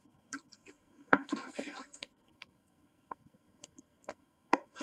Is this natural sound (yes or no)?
no